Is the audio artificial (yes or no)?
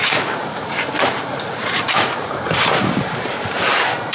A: yes